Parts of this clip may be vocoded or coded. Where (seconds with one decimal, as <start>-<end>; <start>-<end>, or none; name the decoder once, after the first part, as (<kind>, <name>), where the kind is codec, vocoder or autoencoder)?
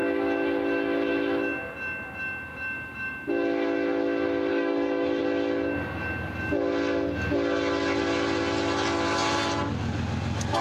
4.5-5.2 (codec, DAC)